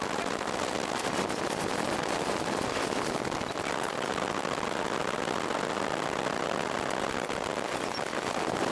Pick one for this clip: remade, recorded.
recorded